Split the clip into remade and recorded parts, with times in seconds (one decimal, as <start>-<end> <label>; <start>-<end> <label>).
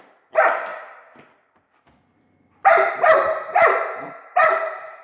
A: 0.0-5.0 recorded